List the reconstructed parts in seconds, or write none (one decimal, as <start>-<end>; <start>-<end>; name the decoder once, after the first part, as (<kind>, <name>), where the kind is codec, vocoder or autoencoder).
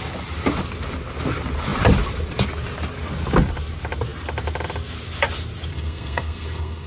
5.7-6.9 (codec, SNAC)